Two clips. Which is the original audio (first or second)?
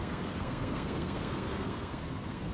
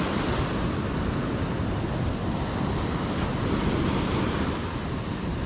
second